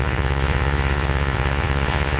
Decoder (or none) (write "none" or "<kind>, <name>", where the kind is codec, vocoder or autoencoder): vocoder, Vocos